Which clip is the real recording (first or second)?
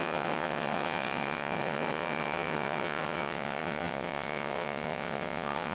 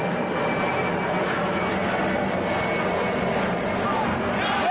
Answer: second